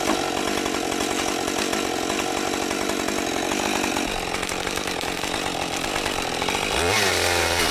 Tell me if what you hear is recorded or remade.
recorded